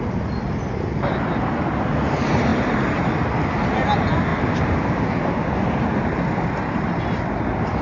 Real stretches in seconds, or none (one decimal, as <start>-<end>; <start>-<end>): 0.0-7.8